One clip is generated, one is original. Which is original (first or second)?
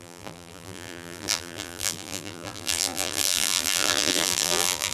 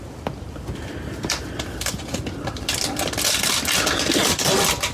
second